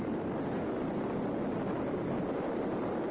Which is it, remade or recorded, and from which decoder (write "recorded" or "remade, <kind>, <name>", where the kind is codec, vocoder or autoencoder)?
recorded